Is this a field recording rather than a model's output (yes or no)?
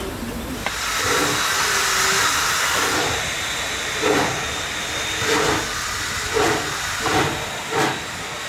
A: yes